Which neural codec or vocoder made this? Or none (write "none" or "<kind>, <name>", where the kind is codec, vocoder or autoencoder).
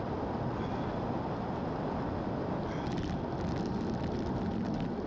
none